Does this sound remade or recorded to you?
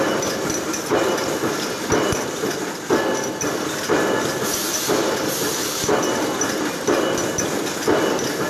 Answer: recorded